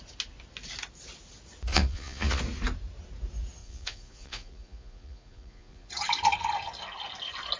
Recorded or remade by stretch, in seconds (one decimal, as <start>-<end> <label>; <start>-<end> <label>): 0.0-1.7 recorded; 1.7-2.4 remade; 2.4-3.6 recorded; 3.6-5.9 remade; 5.9-7.6 recorded